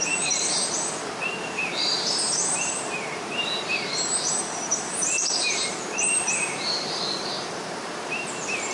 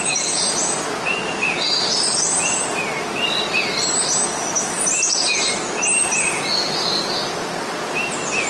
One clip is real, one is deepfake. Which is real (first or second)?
second